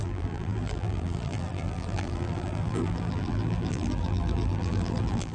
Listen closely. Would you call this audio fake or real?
fake